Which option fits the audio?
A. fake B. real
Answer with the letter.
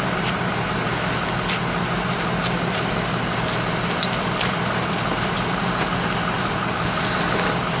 B